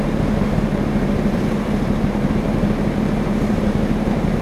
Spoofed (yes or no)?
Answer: yes